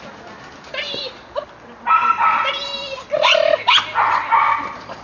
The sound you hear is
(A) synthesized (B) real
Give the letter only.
B